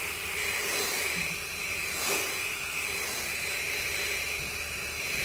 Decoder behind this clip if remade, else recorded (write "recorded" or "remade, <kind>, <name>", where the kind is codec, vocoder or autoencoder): recorded